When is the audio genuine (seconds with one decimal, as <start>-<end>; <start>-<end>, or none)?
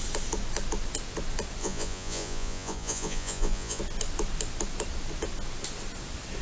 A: 0.0-1.6; 3.8-6.4